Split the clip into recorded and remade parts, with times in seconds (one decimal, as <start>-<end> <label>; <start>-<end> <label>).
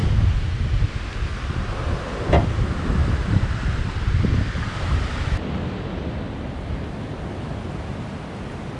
0.0-3.0 recorded; 3.0-3.9 remade; 3.9-8.8 recorded